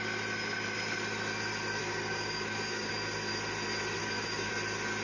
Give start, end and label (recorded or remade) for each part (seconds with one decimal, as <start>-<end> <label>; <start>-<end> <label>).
0.0-1.8 recorded; 1.8-2.9 remade; 2.9-4.0 recorded; 4.0-4.5 remade; 4.5-5.0 recorded